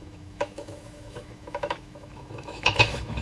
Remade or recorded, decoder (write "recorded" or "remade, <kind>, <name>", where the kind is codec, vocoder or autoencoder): remade, autoencoder, DAC-VAE